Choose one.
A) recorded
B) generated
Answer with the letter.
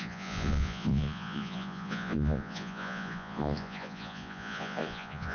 B